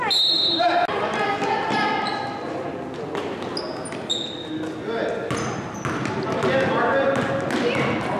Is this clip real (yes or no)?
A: yes